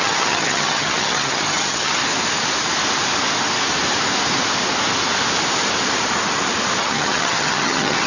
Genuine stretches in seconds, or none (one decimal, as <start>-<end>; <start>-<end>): 2.0-6.8